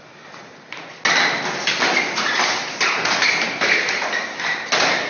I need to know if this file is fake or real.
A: real